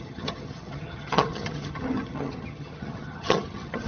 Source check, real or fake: fake